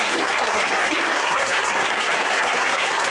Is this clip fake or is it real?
fake